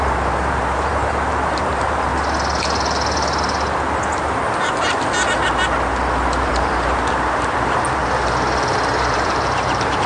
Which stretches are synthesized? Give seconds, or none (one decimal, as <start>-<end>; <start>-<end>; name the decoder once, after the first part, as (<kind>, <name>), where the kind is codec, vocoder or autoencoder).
0.0-2.1 (vocoder, BigVGAN v2); 6.5-8.0; 9.1-10.1